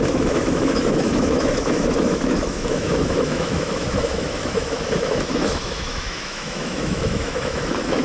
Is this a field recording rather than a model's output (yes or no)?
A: no